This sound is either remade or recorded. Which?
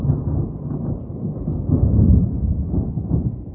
recorded